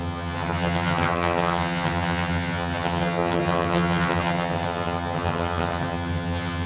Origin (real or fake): fake